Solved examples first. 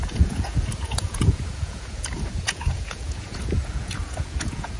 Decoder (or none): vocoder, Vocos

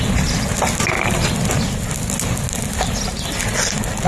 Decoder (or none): none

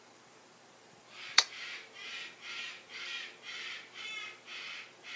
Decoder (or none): vocoder, BigVGAN v2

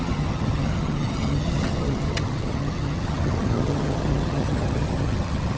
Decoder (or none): vocoder, HiFi-GAN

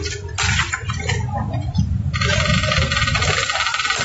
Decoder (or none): none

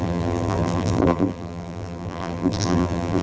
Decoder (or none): vocoder, BigVGAN v2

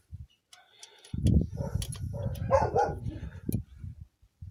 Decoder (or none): none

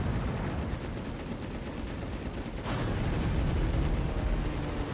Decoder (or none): none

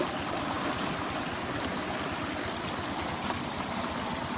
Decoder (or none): none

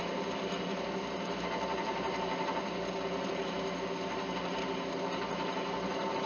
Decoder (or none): none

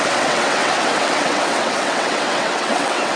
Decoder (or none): vocoder, WaveNeXt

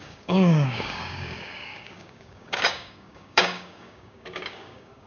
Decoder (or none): codec, DAC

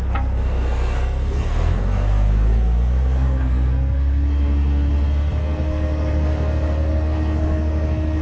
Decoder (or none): codec, SNAC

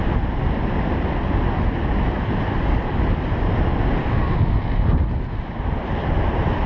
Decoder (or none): none